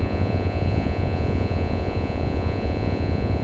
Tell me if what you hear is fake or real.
fake